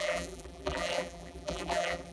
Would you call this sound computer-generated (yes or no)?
yes